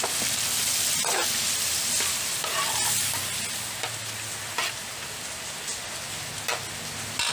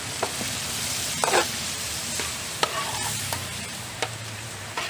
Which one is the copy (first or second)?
second